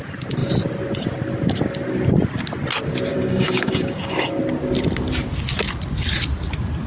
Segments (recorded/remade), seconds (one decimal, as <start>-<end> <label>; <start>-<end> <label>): 0.0-3.1 recorded; 3.1-4.4 remade; 4.4-6.9 recorded